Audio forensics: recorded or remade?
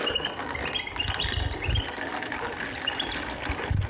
recorded